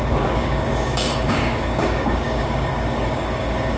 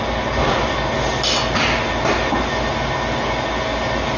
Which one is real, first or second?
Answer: second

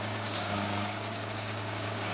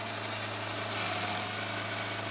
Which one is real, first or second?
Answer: second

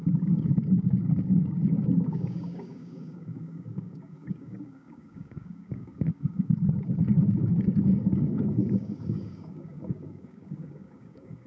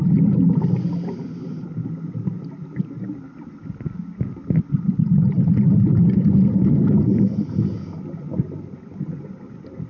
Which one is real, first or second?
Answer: second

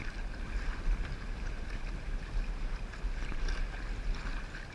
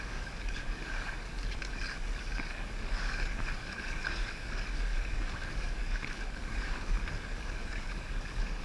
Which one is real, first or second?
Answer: first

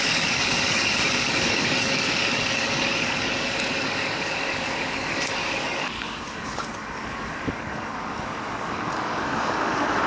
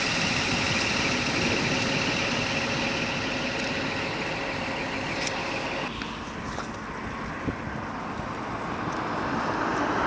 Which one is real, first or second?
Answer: second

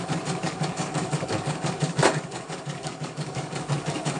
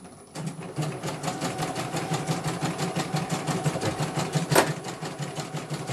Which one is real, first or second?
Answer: second